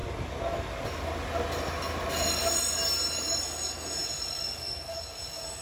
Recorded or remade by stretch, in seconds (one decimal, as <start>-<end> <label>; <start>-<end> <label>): 0.0-5.6 recorded

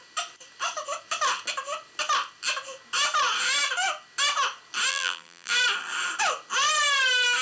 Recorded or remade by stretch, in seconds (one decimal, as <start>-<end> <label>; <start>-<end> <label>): 0.0-4.9 recorded; 4.9-5.5 remade; 5.5-7.4 recorded

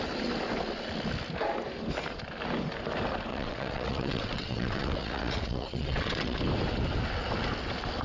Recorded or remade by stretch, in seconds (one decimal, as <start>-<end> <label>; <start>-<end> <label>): 0.0-3.3 recorded; 3.3-6.4 remade; 6.4-8.0 recorded